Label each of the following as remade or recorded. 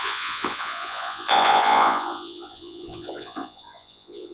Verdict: remade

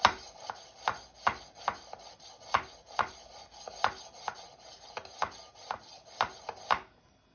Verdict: recorded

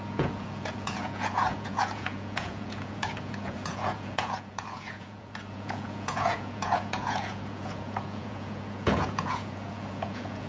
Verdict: remade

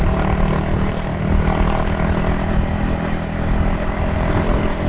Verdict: recorded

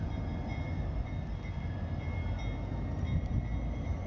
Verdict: recorded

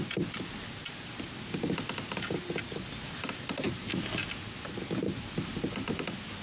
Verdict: recorded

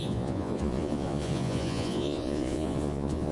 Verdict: remade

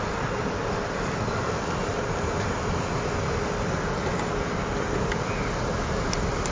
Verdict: recorded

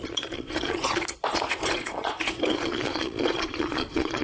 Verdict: remade